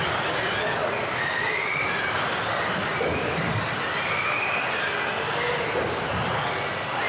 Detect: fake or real real